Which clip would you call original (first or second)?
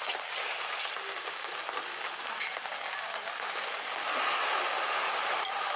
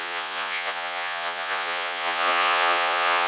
first